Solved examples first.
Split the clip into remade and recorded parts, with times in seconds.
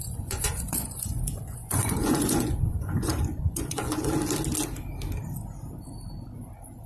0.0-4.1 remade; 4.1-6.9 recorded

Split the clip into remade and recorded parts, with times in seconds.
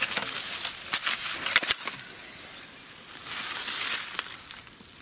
0.0-5.0 recorded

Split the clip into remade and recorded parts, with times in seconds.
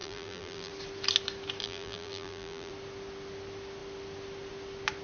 0.0-0.7 remade; 0.7-1.6 recorded; 1.6-2.7 remade; 2.7-5.0 recorded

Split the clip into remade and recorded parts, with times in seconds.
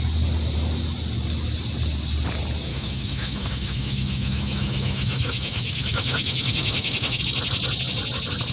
0.0-2.7 recorded; 2.7-7.2 remade; 7.2-8.5 recorded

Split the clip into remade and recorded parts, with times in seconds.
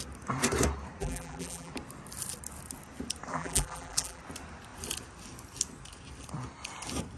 0.0-1.0 recorded; 1.0-1.7 remade; 1.7-3.3 recorded; 3.3-4.2 remade; 4.2-7.2 recorded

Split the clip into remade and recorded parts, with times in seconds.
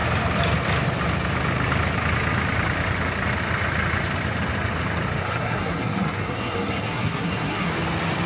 0.0-5.2 recorded; 5.2-7.7 remade; 7.7-8.3 recorded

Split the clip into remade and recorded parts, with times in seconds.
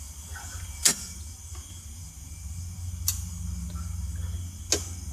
0.0-5.1 recorded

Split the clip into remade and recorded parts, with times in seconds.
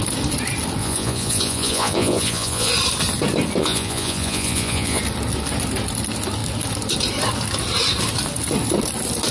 0.0-0.8 recorded; 0.8-2.7 remade; 2.7-3.6 recorded; 3.6-5.0 remade; 5.0-9.3 recorded